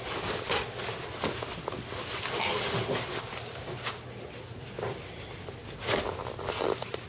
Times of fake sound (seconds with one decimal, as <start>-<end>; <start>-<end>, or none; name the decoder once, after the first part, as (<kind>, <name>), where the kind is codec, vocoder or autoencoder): none